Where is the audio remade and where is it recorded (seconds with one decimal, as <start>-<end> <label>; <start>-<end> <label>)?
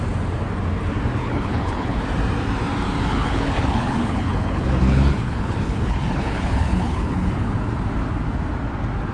0.0-1.2 recorded; 1.2-2.0 remade; 2.0-3.1 recorded; 3.1-7.5 remade; 7.5-9.1 recorded